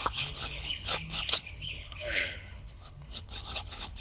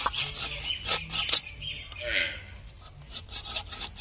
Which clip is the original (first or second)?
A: second